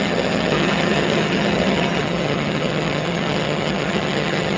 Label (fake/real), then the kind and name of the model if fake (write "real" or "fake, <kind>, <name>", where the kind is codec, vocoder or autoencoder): fake, vocoder, HiFi-GAN